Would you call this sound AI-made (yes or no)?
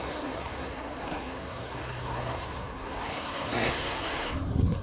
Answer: yes